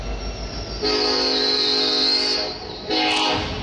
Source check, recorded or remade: recorded